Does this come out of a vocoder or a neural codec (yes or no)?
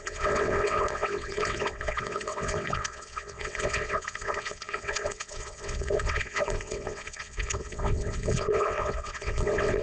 yes